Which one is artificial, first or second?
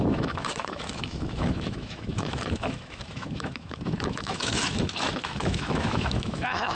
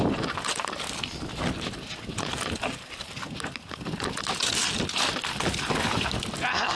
first